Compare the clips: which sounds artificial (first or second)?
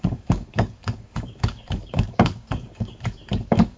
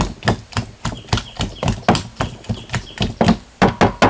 first